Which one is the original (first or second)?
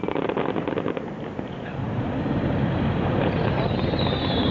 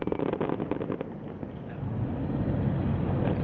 second